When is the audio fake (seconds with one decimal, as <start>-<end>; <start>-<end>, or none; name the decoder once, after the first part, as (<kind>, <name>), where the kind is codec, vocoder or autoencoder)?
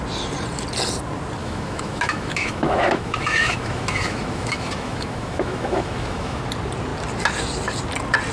1.4-6.4 (autoencoder, DAC-VAE)